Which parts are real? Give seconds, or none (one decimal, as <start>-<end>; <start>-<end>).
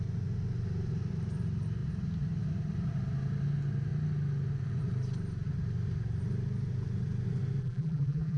0.0-7.6